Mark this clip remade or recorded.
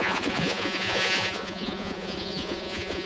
remade